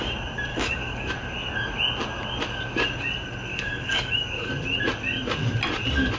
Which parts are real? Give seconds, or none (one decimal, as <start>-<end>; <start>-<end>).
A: 0.0-0.5; 1.1-3.5; 4.5-6.2

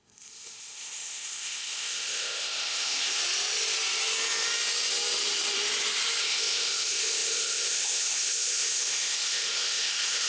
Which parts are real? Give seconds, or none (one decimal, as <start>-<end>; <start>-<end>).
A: 3.2-6.2

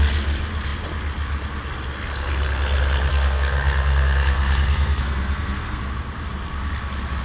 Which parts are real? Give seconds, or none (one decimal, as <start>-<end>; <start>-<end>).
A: 0.0-3.1; 5.8-7.2

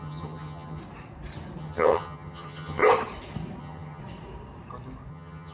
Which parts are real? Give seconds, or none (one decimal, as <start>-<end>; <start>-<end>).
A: 0.8-1.6; 2.8-3.6; 4.0-5.1

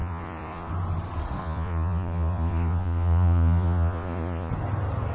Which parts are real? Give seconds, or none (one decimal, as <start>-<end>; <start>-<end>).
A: 0.7-1.4; 4.5-5.1

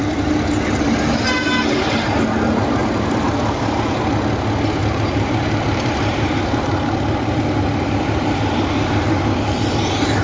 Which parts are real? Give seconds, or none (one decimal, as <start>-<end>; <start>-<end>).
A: 0.0-2.8; 4.0-4.8; 8.6-10.2

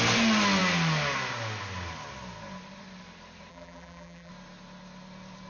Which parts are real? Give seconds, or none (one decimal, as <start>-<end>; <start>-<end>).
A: 0.0-3.5; 4.3-5.5

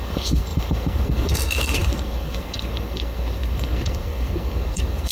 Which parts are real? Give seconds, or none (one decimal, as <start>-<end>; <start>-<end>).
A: none